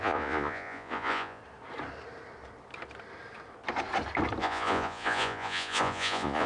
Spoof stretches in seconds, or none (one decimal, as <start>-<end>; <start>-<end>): 0.0-1.4; 4.4-6.5